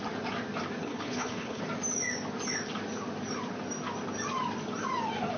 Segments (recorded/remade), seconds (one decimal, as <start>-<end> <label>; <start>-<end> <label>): 0.0-0.8 recorded; 0.8-1.6 remade; 1.6-5.4 recorded